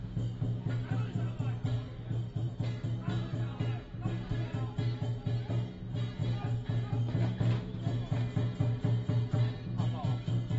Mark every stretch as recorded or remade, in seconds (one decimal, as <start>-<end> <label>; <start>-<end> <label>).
0.0-1.9 recorded; 1.9-2.5 remade; 2.5-10.6 recorded